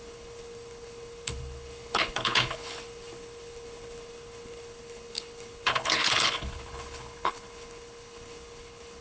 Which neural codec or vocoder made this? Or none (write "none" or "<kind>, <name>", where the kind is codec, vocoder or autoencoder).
codec, HILCodec